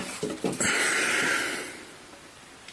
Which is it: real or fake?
real